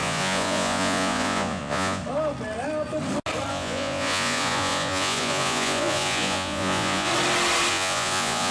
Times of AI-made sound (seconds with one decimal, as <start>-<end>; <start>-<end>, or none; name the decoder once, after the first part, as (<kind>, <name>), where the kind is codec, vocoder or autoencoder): 0.0-2.0 (vocoder, Vocos); 3.5-7.1; 7.7-8.5